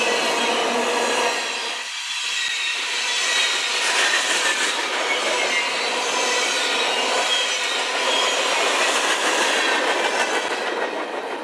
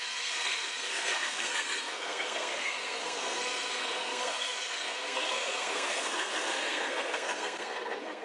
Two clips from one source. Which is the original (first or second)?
first